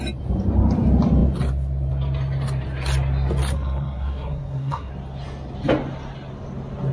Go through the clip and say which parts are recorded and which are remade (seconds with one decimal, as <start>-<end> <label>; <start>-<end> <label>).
0.0-3.5 recorded; 3.5-4.9 remade; 4.9-6.9 recorded